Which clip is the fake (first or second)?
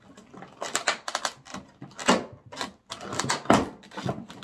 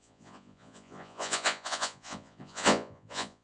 second